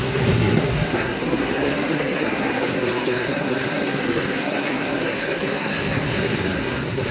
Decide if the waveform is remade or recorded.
remade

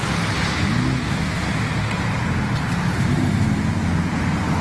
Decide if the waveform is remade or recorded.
recorded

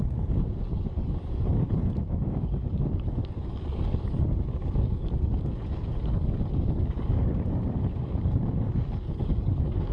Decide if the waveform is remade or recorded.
remade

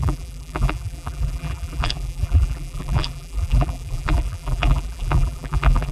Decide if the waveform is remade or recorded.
remade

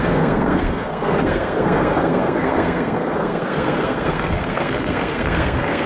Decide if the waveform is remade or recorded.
remade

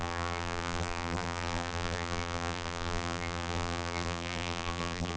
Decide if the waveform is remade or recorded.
remade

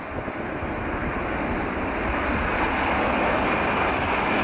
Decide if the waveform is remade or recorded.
recorded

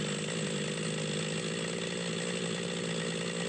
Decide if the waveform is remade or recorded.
recorded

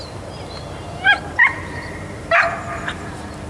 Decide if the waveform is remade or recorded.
remade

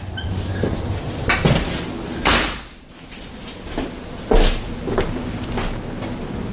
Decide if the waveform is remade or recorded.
recorded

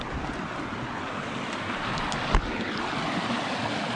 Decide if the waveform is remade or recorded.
recorded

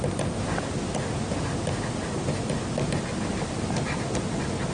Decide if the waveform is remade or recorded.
recorded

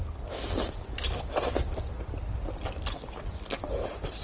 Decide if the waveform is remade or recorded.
recorded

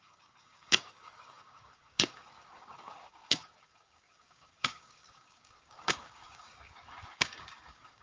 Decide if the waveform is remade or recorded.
remade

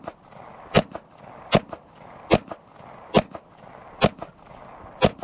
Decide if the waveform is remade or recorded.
recorded